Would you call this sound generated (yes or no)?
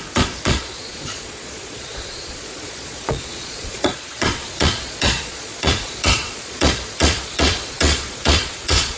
yes